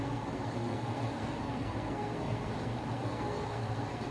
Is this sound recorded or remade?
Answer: remade